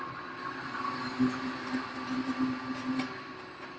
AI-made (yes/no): no